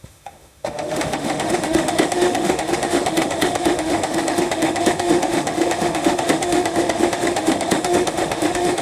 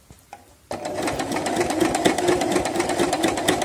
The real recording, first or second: second